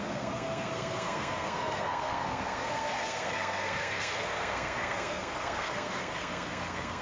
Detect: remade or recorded remade